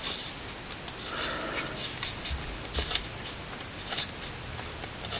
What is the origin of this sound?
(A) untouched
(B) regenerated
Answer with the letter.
A